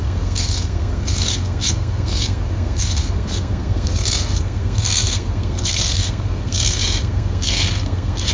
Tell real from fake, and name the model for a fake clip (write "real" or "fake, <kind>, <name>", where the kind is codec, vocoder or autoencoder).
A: fake, codec, SNAC